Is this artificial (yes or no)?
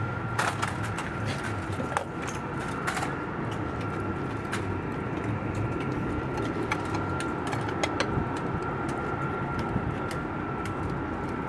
no